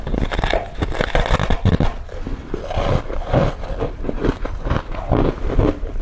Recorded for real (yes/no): yes